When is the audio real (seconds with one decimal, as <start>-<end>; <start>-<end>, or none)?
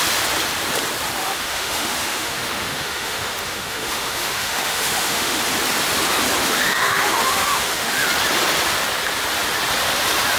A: 0.0-1.2; 5.4-6.4; 8.1-10.4